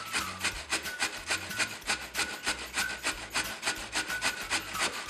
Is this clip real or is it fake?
real